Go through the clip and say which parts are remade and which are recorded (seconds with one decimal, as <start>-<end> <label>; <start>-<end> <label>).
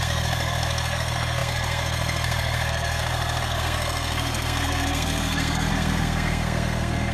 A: 0.0-7.1 remade